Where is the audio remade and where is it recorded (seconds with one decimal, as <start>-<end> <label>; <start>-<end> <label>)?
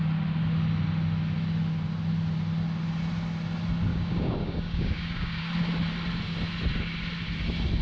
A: 0.0-3.9 recorded; 3.9-5.5 remade; 5.5-7.8 recorded